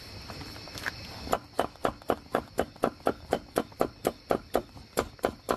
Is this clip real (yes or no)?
yes